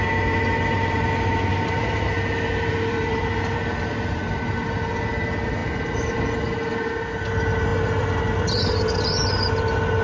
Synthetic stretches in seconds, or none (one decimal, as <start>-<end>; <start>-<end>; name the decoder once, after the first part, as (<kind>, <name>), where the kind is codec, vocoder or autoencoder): 1.5-2.2 (vocoder, BigVGAN v2); 2.7-4.2